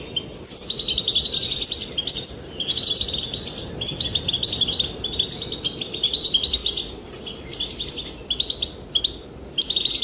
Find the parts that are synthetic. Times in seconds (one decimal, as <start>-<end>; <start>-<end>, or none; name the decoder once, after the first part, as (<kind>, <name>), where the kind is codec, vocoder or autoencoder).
none